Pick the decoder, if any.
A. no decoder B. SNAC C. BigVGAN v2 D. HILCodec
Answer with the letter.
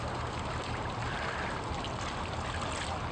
A